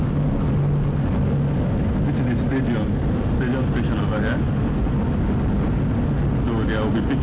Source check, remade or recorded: recorded